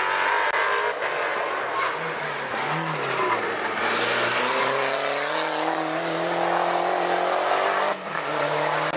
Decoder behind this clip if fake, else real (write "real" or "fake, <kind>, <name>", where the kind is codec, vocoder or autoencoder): real